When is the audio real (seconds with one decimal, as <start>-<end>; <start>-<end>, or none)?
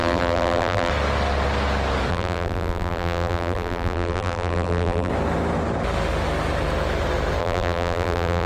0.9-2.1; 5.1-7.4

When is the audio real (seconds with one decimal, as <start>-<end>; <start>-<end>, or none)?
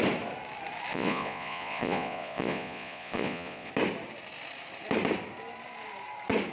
0.0-0.9; 3.7-6.5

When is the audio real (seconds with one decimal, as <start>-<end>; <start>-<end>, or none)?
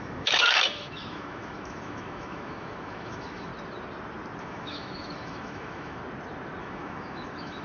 3.5-4.4; 6.0-6.6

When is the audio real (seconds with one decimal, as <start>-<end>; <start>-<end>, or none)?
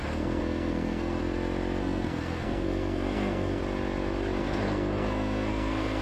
1.2-1.8; 3.6-4.4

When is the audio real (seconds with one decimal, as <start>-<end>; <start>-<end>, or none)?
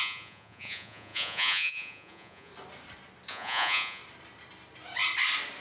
2.5-3.3; 4.0-5.6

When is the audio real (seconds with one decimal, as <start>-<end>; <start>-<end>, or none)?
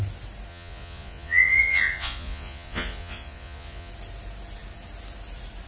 0.0-0.5; 3.9-5.7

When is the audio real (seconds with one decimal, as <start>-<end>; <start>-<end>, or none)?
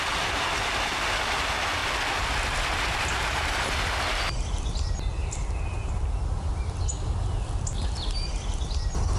0.0-9.2